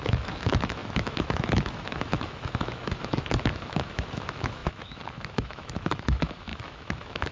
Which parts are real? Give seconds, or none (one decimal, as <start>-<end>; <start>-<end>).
none